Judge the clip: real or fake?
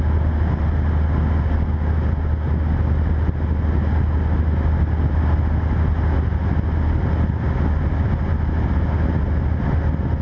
real